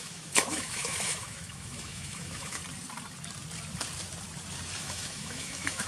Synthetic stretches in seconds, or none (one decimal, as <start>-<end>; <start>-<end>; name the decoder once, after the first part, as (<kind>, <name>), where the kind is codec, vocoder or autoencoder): 0.0-2.6 (autoencoder, DAC-VAE); 4.8-5.9